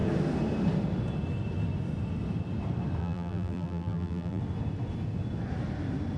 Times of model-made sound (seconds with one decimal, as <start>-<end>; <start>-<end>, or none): 3.0-4.4